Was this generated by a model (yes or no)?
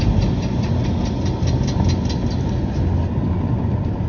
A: no